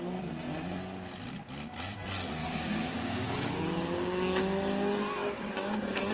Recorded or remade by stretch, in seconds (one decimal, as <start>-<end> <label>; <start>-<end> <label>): 0.0-2.4 recorded; 2.4-4.4 remade; 4.4-5.2 recorded; 5.2-6.1 remade